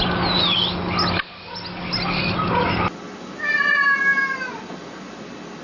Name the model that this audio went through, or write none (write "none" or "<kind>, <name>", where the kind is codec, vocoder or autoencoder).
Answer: none